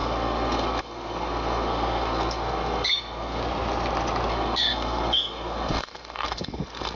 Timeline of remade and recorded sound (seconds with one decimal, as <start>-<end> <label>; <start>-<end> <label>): 0.0-3.4 remade; 3.4-4.3 recorded; 4.3-6.9 remade